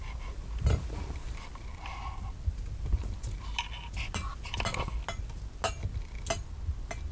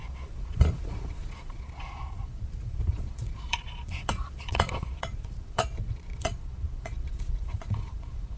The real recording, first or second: first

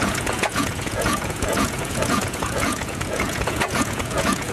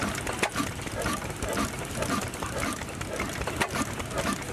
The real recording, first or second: second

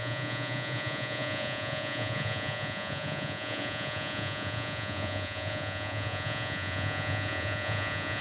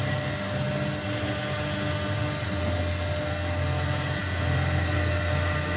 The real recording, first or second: second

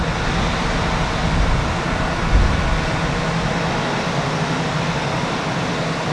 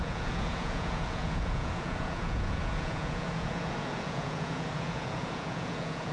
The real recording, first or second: first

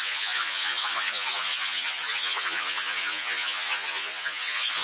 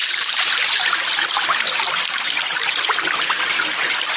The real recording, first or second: second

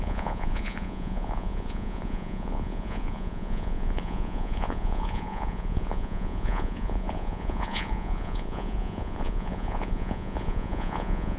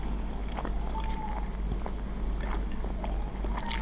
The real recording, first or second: second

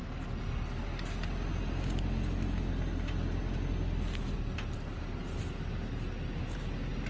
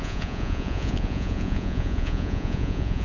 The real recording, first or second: first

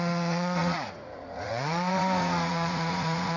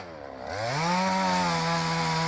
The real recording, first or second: second